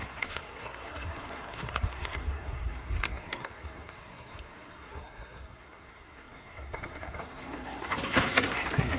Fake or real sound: fake